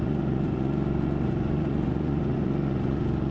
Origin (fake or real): fake